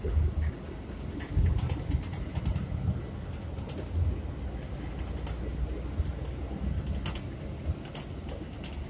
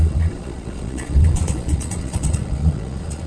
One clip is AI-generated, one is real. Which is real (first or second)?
first